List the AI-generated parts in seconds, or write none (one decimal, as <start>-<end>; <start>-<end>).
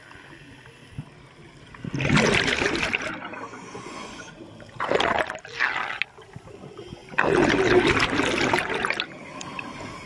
3.5-4.5